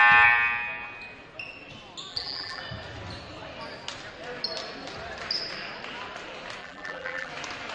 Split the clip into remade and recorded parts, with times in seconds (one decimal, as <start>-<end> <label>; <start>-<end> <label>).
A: 0.0-2.1 recorded; 2.1-2.6 remade; 2.6-6.6 recorded; 6.6-7.3 remade; 7.3-7.7 recorded